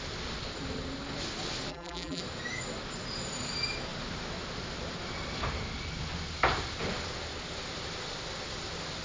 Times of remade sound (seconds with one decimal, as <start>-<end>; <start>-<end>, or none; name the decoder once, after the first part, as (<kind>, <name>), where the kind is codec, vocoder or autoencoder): 1.7-2.2 (vocoder, BigVGAN v2)